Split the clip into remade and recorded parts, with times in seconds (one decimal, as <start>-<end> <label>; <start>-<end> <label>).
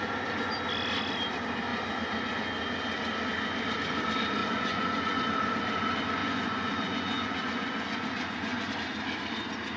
0.0-4.4 recorded; 4.4-5.2 remade; 5.2-6.2 recorded; 6.2-8.7 remade; 8.7-9.8 recorded